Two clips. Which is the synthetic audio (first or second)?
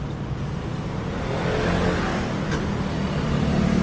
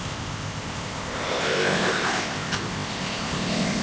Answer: second